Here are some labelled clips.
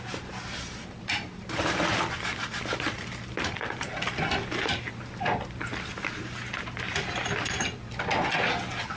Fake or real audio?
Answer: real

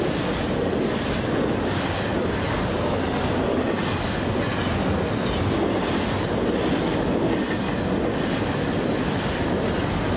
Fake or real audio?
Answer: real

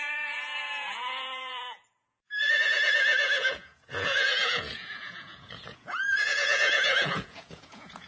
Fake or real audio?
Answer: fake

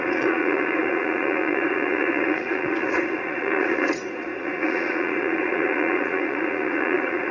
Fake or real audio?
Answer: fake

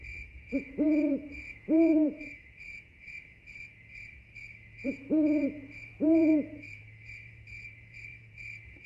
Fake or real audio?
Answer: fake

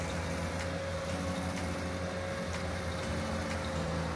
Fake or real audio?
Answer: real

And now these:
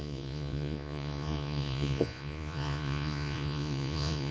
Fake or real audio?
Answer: fake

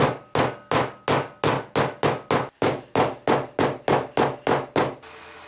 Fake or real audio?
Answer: real